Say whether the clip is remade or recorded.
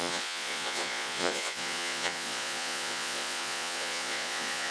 remade